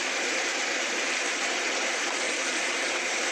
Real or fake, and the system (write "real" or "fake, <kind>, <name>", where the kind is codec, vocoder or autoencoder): fake, vocoder, BigVGAN v2